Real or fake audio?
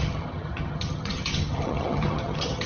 fake